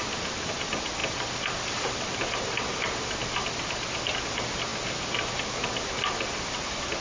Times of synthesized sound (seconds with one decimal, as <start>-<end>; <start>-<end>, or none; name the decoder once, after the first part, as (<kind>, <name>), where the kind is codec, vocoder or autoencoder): none